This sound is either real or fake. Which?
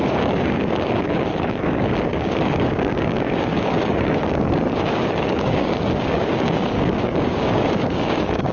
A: fake